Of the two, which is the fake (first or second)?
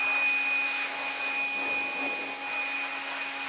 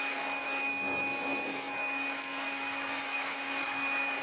second